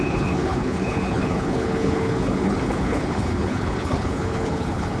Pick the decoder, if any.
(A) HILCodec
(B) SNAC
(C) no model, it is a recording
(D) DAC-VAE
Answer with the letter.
A